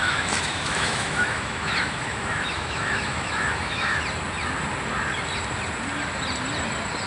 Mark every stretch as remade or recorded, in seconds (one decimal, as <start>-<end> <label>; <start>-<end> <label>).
0.0-4.0 remade; 4.0-7.1 recorded